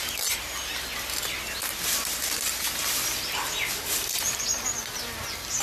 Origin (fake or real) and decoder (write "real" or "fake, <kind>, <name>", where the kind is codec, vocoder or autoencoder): real